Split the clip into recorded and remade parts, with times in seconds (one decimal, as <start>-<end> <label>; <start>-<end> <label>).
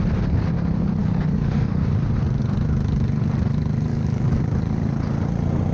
0.0-1.0 recorded; 1.0-1.8 remade; 1.8-3.9 recorded; 3.9-4.4 remade; 4.4-5.7 recorded